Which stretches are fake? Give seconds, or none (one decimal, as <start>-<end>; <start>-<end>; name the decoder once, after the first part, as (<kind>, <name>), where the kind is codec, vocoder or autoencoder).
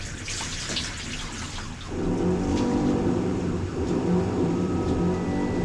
2.5-5.0 (vocoder, BigVGAN v2)